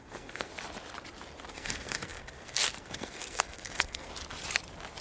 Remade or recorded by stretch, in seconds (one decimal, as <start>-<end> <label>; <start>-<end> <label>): 0.0-0.5 remade; 0.5-1.5 recorded; 1.5-4.1 remade; 4.1-5.0 recorded

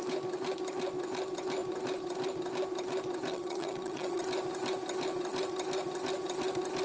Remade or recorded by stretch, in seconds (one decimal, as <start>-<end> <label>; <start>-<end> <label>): 0.0-3.3 recorded; 3.3-4.2 remade; 4.2-6.8 recorded

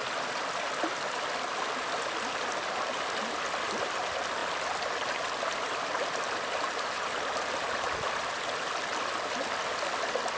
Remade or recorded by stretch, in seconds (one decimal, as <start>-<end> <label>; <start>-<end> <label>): 0.0-10.4 recorded

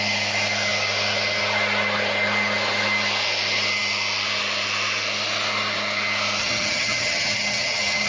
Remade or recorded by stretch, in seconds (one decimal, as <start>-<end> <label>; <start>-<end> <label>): 0.0-6.4 recorded; 6.4-8.1 remade